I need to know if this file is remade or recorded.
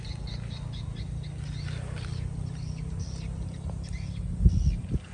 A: recorded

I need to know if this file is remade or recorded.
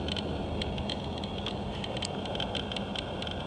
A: recorded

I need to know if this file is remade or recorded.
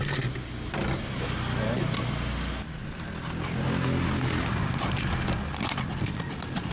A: recorded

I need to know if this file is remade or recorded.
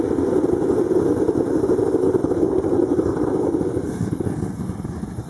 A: recorded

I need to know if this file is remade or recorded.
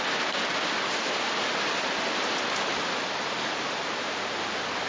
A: recorded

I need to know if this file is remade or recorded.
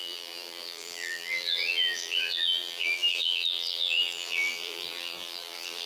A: remade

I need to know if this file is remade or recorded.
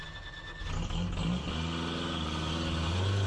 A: recorded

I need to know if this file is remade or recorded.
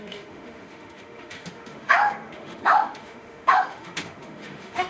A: remade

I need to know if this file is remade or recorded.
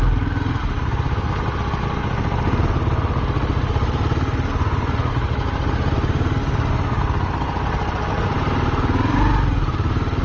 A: recorded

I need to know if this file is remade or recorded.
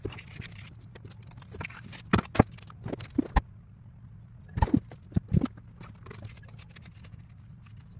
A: recorded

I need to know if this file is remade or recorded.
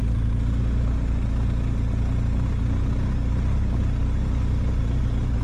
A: recorded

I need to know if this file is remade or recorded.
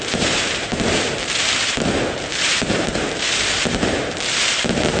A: remade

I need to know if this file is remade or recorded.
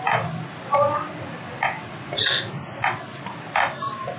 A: recorded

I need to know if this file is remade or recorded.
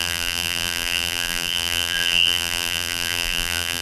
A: remade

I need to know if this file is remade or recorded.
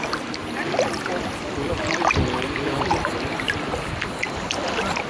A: recorded